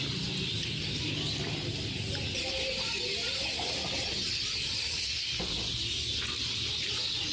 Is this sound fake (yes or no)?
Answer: no